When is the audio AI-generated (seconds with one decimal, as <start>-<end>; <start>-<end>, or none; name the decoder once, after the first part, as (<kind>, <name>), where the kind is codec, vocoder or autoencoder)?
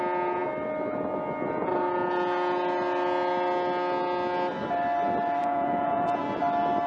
5.4-6.2 (vocoder, Vocos)